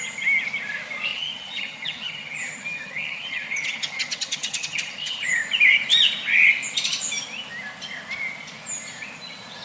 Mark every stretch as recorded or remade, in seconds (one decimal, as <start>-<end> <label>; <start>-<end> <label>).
0.0-1.1 recorded; 1.1-5.3 remade; 5.3-9.6 recorded

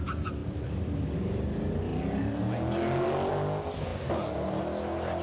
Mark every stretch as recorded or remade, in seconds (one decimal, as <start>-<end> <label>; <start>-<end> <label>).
0.0-5.2 recorded

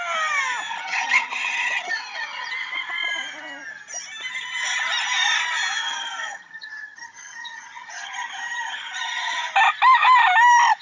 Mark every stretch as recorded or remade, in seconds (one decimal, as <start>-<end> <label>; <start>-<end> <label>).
0.0-0.7 recorded; 0.7-2.5 remade; 2.5-5.8 recorded; 5.8-9.5 remade; 9.5-10.8 recorded

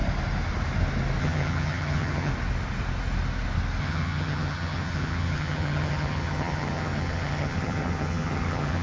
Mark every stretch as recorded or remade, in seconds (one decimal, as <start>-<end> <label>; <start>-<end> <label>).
0.0-1.2 recorded; 1.2-2.3 remade; 2.3-3.8 recorded; 3.8-8.8 remade

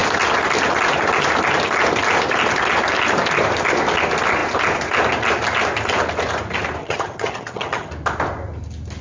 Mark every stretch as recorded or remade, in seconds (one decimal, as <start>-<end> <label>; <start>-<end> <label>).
0.0-6.8 recorded; 6.8-7.9 remade; 7.9-9.0 recorded

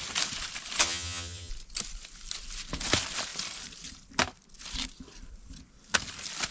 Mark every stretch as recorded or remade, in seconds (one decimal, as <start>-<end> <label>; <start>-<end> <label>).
0.0-0.8 recorded; 0.8-1.5 remade; 1.5-6.5 recorded

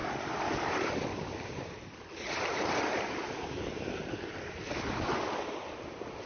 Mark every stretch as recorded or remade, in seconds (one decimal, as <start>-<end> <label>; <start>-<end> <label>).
0.0-6.3 recorded